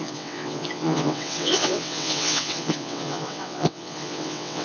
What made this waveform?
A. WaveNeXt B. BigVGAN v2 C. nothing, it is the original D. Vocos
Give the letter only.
A